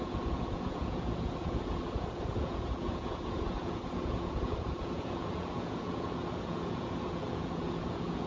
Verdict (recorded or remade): remade